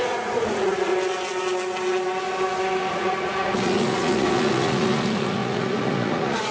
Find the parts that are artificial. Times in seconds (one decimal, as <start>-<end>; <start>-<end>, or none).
0.0-0.9; 2.9-6.5